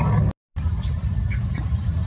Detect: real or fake real